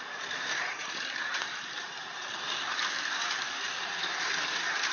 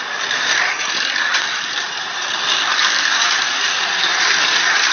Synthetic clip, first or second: first